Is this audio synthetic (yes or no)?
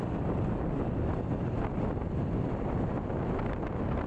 no